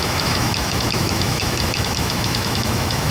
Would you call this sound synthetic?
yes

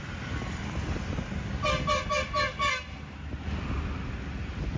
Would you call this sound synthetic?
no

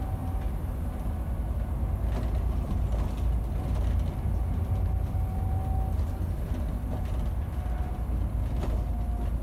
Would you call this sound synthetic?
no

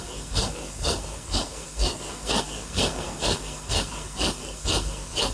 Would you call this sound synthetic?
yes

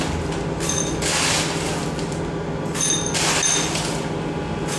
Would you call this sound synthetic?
no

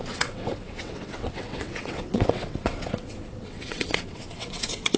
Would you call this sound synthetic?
yes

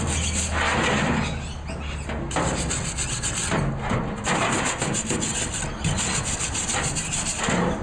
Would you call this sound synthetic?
no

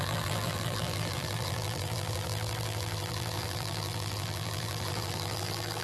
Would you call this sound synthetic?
yes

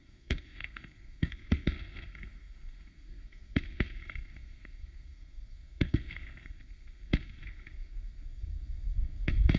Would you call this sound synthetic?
yes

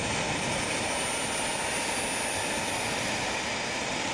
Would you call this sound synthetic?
no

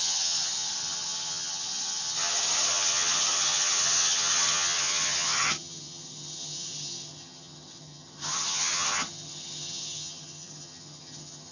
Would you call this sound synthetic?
yes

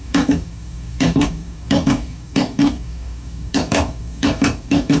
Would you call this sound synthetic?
yes